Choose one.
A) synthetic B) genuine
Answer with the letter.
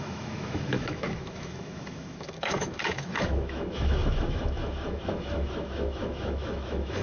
A